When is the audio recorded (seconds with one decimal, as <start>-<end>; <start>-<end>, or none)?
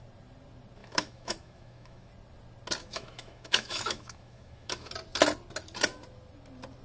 0.0-0.8; 2.1-2.8; 4.9-6.8